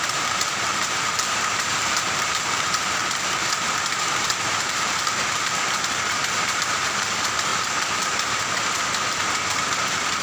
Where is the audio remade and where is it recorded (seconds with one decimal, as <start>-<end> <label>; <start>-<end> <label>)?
0.0-3.0 remade; 3.0-4.4 recorded; 4.4-9.2 remade; 9.2-10.2 recorded